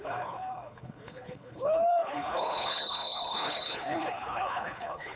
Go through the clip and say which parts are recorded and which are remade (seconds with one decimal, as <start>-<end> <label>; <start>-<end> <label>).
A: 0.0-5.2 remade